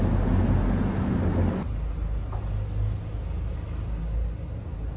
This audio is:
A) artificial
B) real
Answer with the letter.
B